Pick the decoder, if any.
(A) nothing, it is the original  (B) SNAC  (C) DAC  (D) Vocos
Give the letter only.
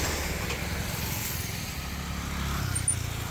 A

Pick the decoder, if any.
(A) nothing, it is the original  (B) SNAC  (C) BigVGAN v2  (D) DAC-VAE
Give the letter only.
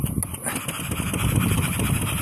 A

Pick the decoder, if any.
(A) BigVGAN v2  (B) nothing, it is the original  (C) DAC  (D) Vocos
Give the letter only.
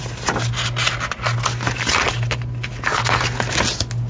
B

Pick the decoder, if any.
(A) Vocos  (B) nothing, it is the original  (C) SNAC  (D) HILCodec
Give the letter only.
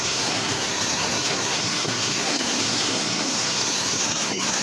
C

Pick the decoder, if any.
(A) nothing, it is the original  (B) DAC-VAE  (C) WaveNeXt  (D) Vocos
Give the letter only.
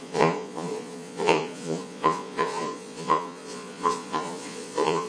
D